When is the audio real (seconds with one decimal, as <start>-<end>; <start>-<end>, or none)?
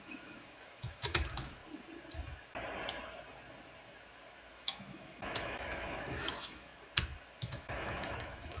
1.6-4.5; 6.7-7.4